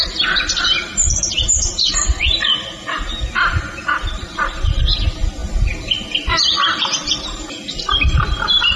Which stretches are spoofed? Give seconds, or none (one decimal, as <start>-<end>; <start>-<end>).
none